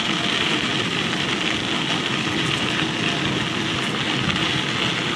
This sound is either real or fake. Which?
real